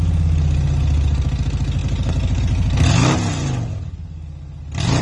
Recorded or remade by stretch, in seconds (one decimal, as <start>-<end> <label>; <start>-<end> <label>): 0.0-5.0 recorded